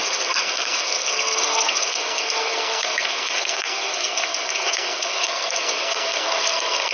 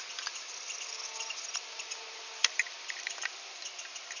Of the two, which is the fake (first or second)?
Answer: first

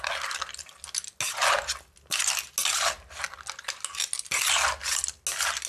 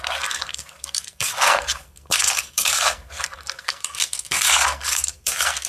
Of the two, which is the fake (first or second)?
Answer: second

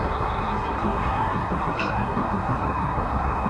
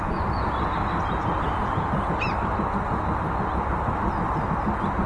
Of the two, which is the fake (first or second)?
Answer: first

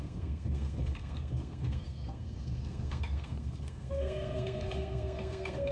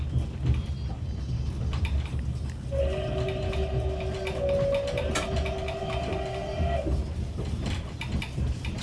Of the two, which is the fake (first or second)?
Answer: first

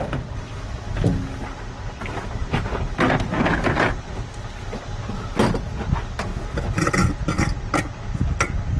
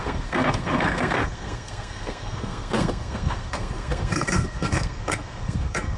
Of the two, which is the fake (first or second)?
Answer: second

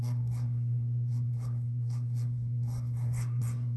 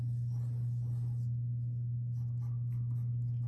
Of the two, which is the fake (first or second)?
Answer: first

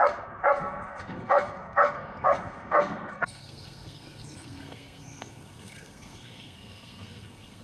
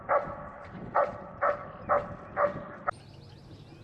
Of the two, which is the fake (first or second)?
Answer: first